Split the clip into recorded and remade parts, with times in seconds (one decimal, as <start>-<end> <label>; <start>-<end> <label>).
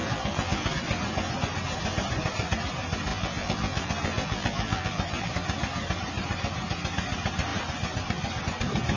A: 0.0-0.7 remade; 0.7-3.1 recorded; 3.1-5.3 remade; 5.3-9.0 recorded